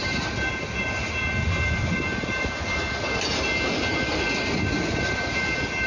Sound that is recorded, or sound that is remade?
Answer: recorded